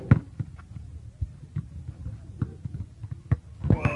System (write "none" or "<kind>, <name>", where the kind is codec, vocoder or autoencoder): none